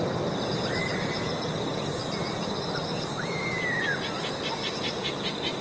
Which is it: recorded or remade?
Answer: recorded